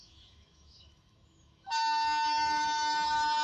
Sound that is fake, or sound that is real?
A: fake